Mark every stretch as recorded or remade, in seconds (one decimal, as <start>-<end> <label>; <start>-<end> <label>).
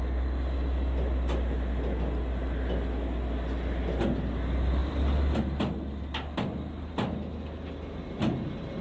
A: 0.0-8.8 recorded